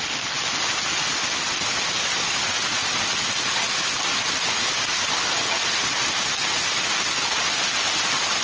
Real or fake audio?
real